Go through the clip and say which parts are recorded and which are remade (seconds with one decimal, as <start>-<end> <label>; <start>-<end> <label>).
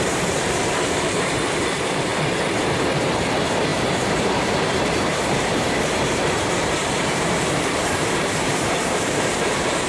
0.0-2.1 remade; 2.1-3.0 recorded; 3.0-9.9 remade